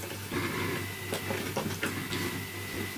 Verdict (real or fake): real